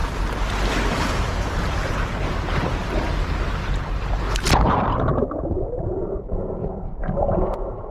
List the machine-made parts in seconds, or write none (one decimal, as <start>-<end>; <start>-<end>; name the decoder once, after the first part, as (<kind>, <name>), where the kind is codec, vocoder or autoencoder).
1.1-2.1 (vocoder, Vocos); 5.4-7.9